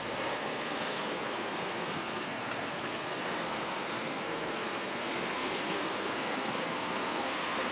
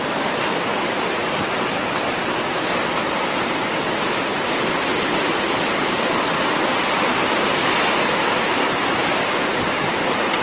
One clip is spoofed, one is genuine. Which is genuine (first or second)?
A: second